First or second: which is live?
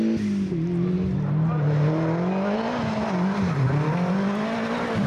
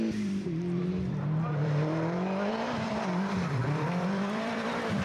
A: first